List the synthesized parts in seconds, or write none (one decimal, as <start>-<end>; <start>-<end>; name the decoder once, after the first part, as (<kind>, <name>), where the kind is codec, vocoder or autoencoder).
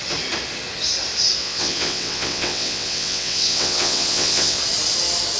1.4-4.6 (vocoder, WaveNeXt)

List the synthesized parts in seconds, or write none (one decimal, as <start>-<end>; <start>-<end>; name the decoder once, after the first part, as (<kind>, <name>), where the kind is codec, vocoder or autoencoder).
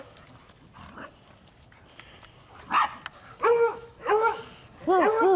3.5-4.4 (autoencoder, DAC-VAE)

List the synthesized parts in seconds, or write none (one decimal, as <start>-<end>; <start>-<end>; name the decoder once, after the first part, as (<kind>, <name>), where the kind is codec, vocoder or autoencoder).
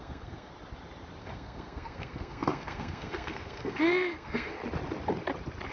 0.0-0.5 (codec, SNAC); 1.2-4.6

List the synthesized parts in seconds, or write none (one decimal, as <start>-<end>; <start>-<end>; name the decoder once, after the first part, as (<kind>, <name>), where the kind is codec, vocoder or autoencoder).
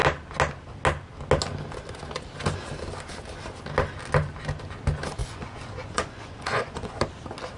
5.2-7.0 (vocoder, Vocos)